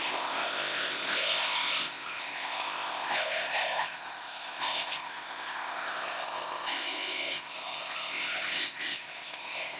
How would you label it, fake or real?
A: fake